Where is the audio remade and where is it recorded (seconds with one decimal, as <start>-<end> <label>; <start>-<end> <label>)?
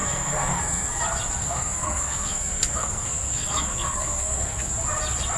0.0-1.0 remade; 1.0-1.4 recorded; 1.4-4.6 remade; 4.6-5.4 recorded